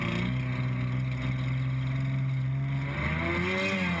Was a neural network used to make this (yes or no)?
no